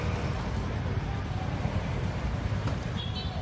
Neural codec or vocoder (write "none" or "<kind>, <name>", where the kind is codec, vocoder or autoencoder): none